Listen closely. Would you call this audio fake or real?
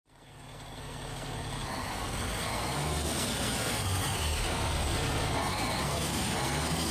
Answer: fake